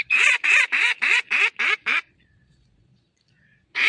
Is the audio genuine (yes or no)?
no